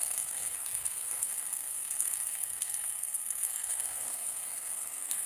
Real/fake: fake